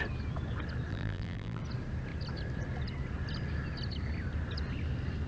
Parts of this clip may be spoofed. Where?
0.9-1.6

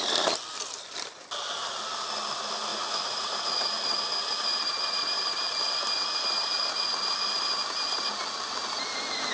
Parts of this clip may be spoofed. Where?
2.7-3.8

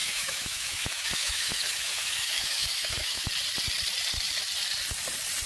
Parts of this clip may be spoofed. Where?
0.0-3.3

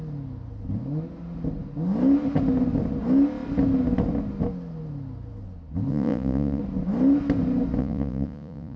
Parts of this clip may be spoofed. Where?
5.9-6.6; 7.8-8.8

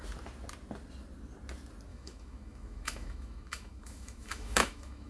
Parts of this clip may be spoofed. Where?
1.9-5.1

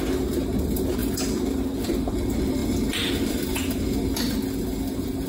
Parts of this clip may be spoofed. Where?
none